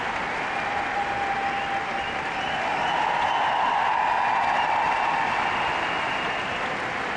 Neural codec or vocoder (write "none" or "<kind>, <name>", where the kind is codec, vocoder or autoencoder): none